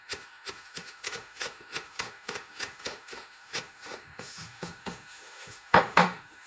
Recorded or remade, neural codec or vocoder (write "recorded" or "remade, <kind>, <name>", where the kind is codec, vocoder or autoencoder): remade, autoencoder, DAC-VAE